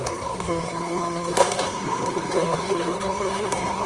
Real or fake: fake